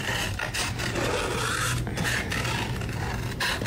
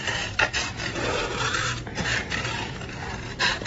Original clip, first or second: first